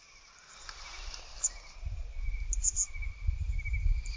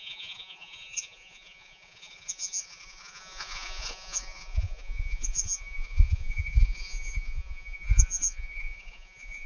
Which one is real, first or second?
first